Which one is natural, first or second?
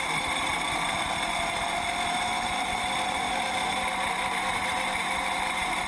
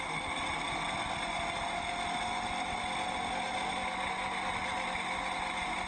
second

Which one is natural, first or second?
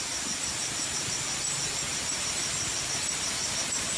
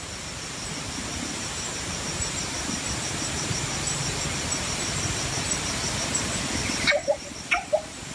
first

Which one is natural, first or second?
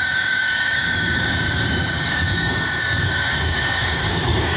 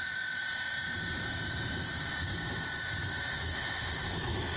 second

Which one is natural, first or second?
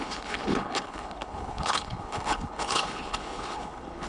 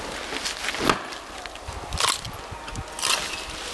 second